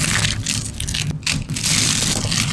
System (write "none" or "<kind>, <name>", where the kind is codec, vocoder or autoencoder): none